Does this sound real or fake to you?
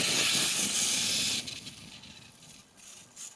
real